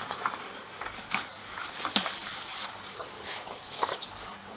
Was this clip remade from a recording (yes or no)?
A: yes